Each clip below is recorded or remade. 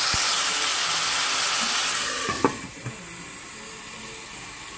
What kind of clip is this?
recorded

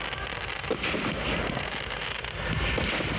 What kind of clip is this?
recorded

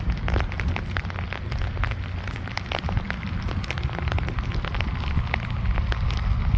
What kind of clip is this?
recorded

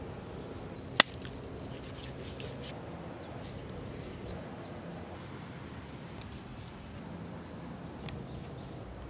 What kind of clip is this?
recorded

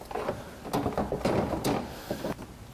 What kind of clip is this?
recorded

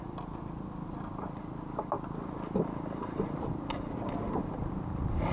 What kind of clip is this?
recorded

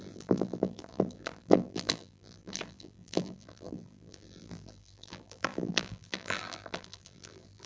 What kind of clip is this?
remade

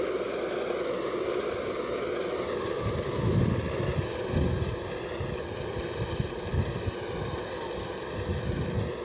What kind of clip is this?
recorded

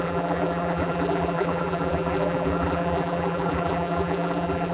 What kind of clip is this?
remade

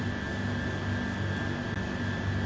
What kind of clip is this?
recorded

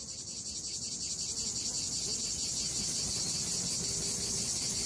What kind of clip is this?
recorded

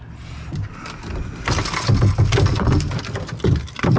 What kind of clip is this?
recorded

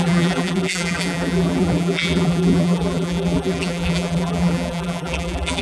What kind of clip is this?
remade